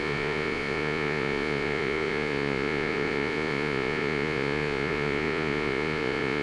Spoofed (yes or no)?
yes